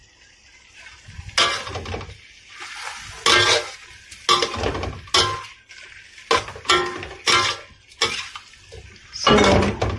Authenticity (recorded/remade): recorded